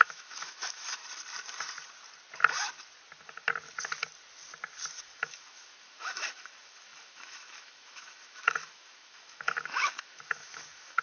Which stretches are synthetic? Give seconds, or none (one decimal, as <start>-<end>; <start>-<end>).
0.0-1.0; 5.0-11.0